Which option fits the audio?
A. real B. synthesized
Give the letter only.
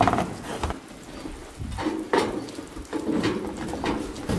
A